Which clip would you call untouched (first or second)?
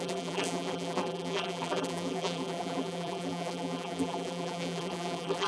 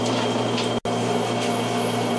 second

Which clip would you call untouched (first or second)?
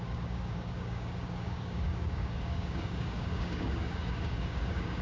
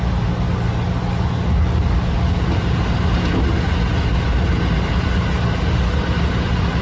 second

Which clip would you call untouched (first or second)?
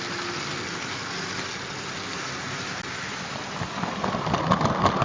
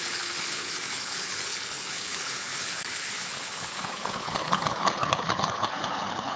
first